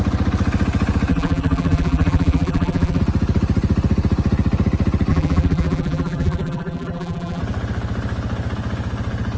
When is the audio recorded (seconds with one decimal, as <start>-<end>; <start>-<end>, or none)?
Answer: 0.0-1.1; 3.0-5.1; 7.4-9.4